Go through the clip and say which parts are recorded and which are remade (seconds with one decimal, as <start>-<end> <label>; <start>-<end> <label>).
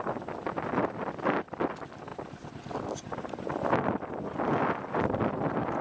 0.0-5.8 recorded